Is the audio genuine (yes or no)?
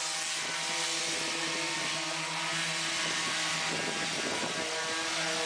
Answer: yes